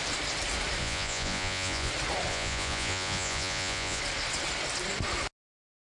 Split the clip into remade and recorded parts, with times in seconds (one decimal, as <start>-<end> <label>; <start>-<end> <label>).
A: 0.0-0.8 recorded; 0.8-1.9 remade; 1.9-2.3 recorded; 2.3-4.0 remade; 4.0-5.8 recorded